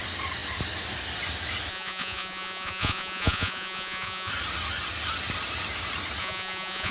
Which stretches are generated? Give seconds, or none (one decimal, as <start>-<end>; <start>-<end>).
1.7-4.3; 6.2-6.9

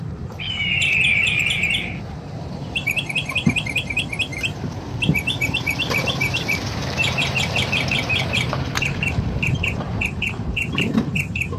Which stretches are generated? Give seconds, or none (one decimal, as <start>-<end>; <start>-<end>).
0.0-11.6

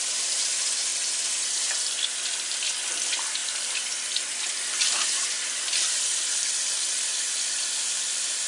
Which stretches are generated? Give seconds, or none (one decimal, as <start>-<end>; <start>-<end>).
0.0-0.9; 2.9-8.5

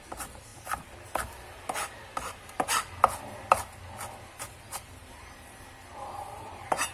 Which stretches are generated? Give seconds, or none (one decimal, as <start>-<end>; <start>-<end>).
0.0-0.5; 4.6-6.9